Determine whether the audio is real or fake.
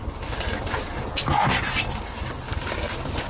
real